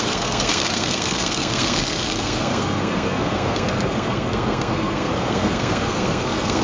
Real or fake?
fake